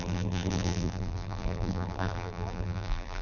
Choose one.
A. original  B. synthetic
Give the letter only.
B